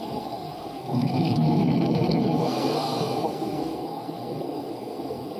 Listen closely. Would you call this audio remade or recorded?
remade